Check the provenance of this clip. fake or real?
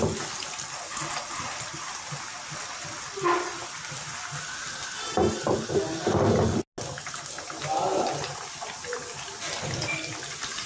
real